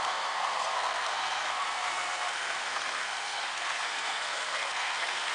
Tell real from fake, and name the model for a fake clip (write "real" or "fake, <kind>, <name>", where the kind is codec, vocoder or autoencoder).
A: fake, codec, SNAC